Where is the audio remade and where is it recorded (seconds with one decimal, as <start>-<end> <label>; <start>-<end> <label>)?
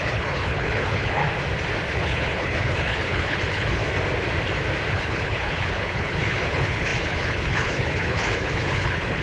0.0-1.2 remade; 1.2-1.9 recorded; 1.9-3.8 remade; 3.8-4.9 recorded; 4.9-9.2 remade